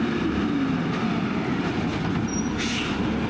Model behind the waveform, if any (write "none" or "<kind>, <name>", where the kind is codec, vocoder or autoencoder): none